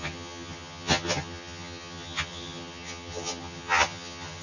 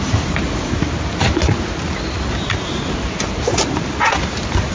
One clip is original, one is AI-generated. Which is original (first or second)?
second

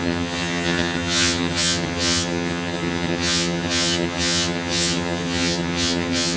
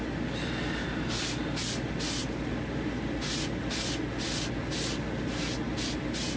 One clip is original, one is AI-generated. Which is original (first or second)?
second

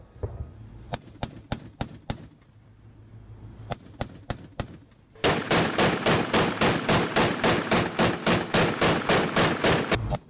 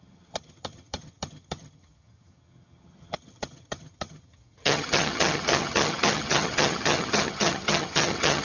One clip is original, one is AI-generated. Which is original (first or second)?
first